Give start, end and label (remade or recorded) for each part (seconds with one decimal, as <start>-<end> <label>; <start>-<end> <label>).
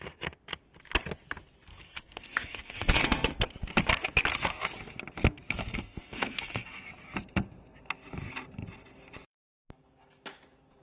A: 0.0-1.7 recorded; 1.7-3.4 remade; 3.4-5.7 recorded; 5.7-6.9 remade; 6.9-10.8 recorded